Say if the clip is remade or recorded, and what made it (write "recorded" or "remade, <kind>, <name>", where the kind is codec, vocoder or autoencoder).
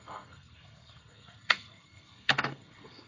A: remade, codec, SNAC